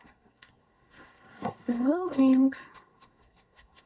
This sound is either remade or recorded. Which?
remade